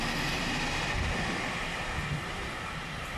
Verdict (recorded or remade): recorded